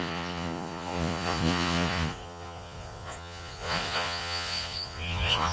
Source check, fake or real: fake